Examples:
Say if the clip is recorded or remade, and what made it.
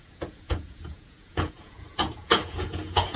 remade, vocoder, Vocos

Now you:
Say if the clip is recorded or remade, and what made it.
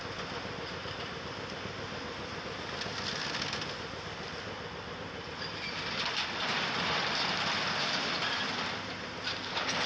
recorded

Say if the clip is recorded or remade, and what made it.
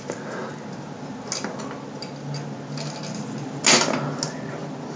recorded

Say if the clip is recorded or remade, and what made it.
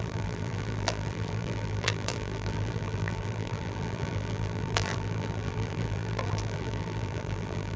remade, vocoder, BigVGAN v2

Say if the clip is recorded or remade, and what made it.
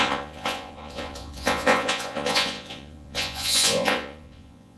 remade, vocoder, Vocos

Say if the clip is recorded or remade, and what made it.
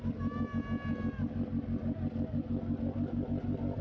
recorded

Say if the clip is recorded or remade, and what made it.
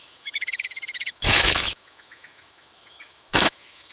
remade, autoencoder, DAC-VAE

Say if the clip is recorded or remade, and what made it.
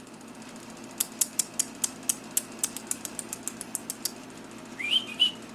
recorded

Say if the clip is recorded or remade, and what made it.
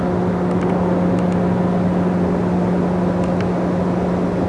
recorded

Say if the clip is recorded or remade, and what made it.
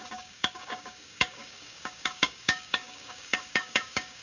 remade, codec, DAC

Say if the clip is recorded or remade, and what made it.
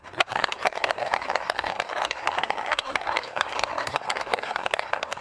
remade, codec, SNAC